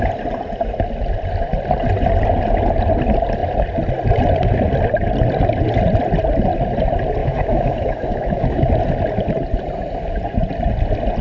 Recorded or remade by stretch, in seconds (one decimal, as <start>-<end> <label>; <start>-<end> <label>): 0.0-7.2 recorded; 7.2-8.7 remade; 8.7-11.2 recorded